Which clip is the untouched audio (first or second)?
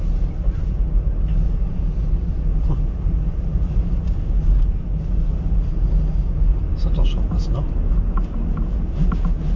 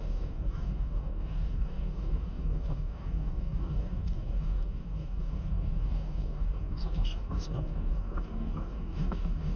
first